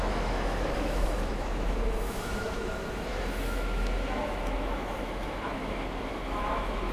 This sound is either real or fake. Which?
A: fake